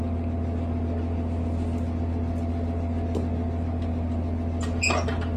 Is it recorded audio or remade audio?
recorded